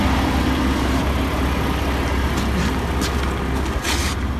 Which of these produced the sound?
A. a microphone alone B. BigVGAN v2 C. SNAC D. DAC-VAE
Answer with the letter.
A